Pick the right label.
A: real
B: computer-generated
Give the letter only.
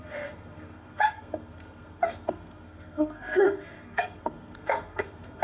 B